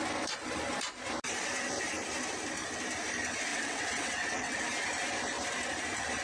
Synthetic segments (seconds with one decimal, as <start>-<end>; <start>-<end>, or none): 3.5-4.6